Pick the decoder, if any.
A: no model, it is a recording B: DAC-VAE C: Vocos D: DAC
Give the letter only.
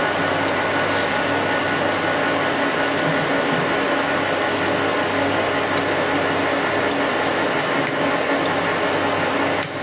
A